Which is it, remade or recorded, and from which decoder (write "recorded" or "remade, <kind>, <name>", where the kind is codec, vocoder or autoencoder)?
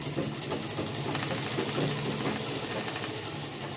recorded